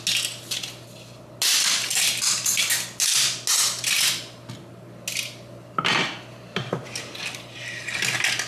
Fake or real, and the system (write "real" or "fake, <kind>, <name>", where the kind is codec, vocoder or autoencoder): real